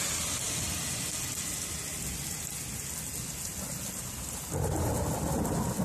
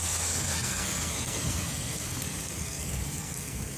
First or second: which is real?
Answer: first